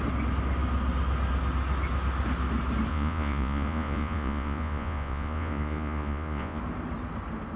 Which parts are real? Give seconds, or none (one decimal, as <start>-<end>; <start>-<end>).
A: 0.0-2.9; 6.6-7.6